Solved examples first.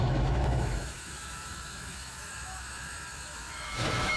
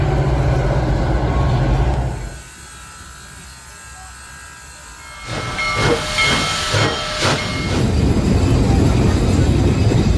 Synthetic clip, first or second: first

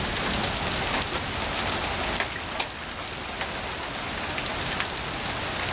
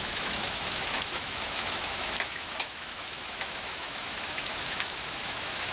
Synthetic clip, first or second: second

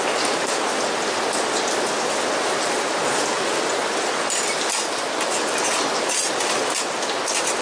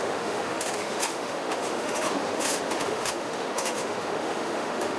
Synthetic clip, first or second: second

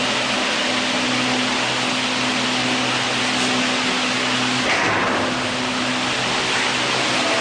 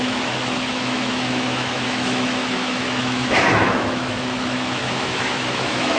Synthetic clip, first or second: second